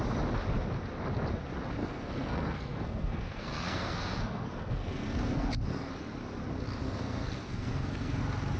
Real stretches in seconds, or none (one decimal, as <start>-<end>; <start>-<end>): 0.0-1.8; 5.9-6.8; 8.2-8.6